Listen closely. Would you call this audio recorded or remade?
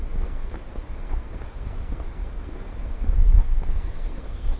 remade